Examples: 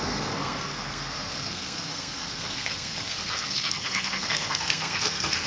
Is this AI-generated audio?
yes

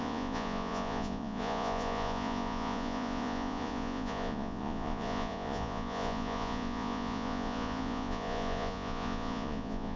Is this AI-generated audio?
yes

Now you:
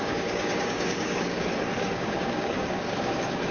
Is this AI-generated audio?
yes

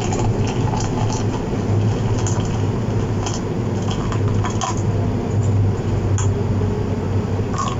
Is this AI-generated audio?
no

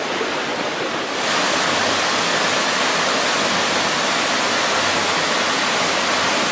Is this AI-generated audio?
no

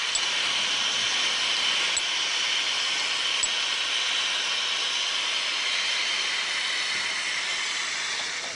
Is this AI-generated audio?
no